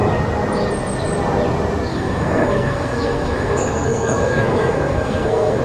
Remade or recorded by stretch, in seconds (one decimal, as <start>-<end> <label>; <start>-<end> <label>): 0.0-1.9 recorded; 1.9-5.6 remade